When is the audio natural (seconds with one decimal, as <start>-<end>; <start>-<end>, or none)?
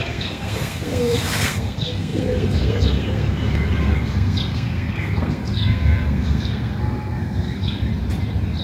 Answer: 7.9-8.6